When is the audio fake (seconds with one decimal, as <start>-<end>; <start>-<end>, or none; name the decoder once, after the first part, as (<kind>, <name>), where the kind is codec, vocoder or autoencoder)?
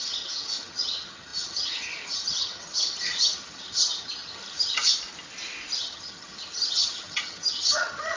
0.0-4.9 (vocoder, HiFi-GAN); 5.8-8.2